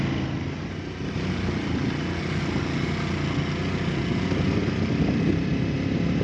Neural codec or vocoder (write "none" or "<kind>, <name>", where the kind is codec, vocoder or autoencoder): none